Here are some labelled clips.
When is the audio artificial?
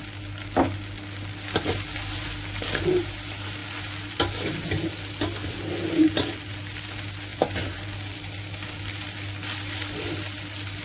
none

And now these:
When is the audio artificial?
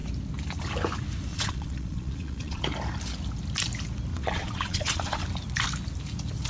1.3-2.6 (vocoder, Vocos); 4.1-5.2